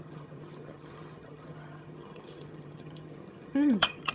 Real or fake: fake